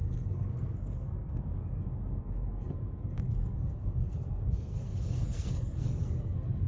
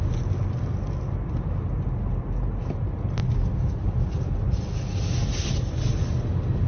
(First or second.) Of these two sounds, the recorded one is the second